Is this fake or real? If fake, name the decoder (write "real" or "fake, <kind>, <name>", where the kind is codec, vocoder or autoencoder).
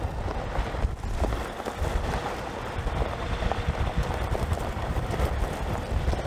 real